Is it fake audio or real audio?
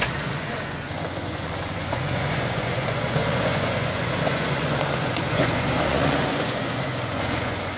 fake